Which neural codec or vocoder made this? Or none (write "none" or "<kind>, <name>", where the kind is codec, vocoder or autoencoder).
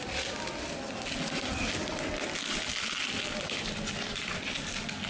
none